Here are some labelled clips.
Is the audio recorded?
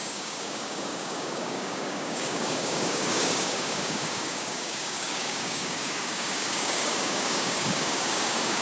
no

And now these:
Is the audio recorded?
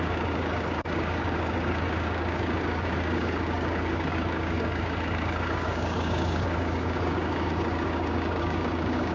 no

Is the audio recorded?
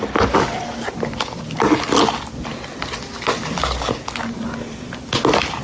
yes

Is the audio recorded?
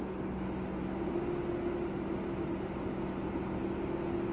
yes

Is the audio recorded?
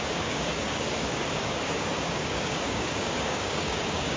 no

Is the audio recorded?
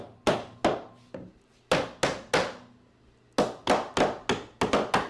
yes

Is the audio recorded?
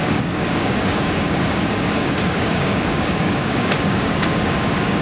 no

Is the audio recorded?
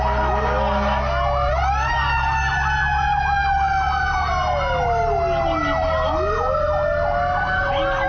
yes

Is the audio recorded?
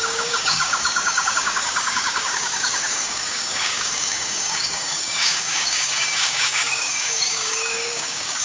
no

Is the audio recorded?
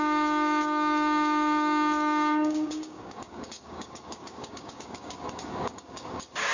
no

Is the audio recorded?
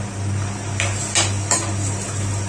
yes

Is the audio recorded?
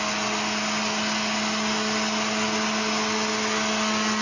yes